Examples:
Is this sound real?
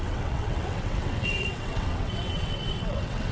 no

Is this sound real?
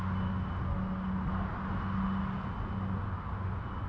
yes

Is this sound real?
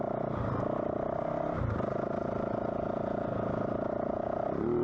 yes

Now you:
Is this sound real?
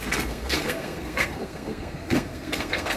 no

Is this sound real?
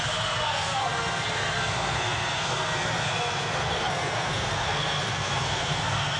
no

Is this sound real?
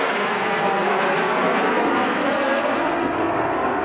no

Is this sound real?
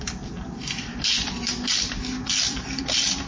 no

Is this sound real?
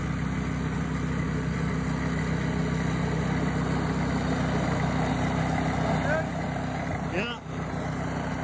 yes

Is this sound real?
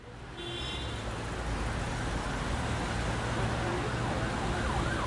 yes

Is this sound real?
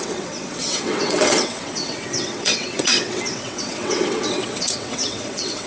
no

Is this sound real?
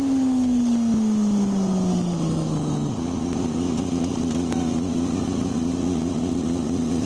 yes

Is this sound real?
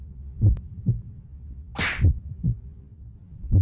yes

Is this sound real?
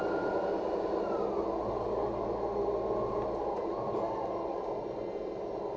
yes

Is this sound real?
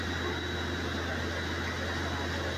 yes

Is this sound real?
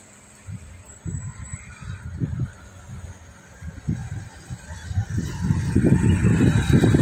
yes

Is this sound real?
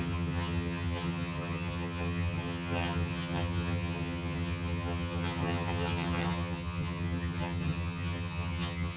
no